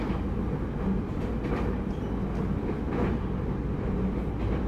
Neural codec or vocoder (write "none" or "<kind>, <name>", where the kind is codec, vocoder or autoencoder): none